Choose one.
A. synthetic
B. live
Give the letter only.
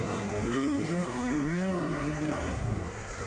A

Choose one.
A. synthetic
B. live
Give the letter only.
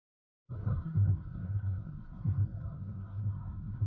A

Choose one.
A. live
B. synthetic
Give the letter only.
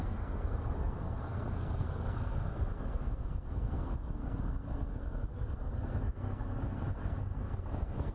B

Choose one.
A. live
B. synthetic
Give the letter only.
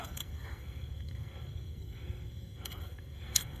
B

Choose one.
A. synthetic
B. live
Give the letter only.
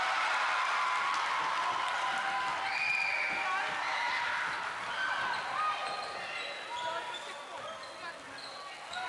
B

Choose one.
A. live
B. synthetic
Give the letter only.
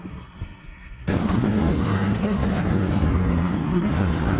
B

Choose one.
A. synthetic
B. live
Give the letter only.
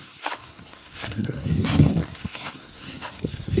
A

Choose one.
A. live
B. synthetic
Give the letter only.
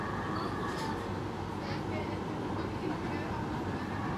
A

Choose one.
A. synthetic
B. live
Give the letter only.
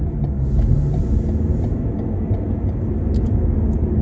B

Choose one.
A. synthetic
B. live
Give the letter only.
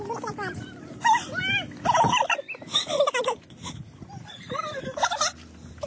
B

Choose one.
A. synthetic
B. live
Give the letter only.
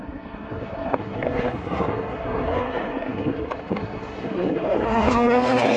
A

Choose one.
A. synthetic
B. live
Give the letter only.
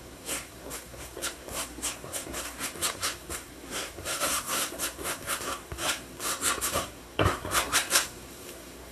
A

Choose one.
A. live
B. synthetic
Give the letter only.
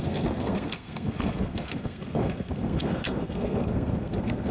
B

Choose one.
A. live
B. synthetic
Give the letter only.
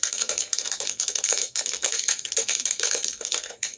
B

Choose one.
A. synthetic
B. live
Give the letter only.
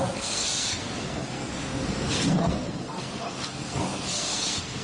A